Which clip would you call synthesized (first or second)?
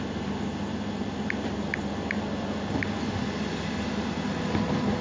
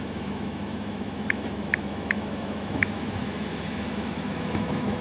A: second